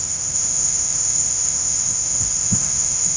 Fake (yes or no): yes